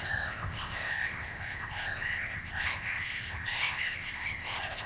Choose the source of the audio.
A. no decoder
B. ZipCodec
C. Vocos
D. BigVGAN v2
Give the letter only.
B